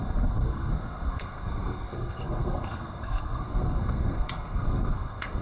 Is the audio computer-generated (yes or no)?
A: yes